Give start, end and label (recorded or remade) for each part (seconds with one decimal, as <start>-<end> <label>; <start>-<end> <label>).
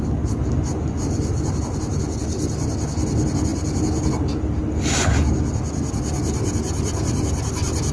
0.0-7.9 recorded